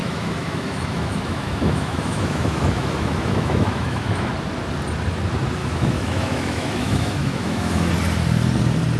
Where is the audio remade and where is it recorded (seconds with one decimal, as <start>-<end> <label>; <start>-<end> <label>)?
0.0-4.3 remade; 4.3-5.6 recorded; 5.6-7.9 remade; 7.9-9.0 recorded